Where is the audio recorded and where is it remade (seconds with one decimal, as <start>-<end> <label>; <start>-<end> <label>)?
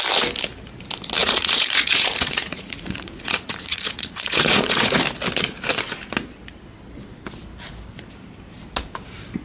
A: 0.0-1.2 recorded; 1.2-5.0 remade; 5.0-9.4 recorded